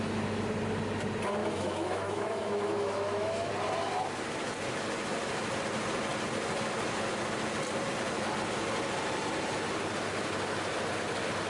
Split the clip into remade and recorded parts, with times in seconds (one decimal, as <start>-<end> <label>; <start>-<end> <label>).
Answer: 0.0-1.4 recorded; 1.4-3.5 remade; 3.5-11.5 recorded